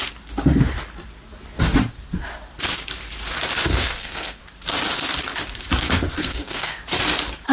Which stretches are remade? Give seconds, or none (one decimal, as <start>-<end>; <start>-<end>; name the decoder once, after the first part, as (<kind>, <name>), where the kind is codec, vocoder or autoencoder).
3.7-4.4 (codec, SNAC); 6.2-6.8